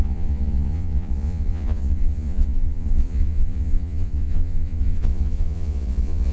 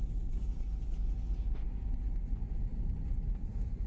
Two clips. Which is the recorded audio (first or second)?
second